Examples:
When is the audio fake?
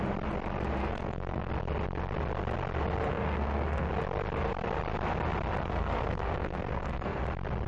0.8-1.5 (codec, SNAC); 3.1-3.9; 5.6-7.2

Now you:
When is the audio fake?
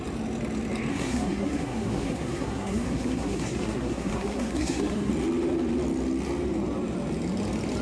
0.9-5.1 (codec, SNAC)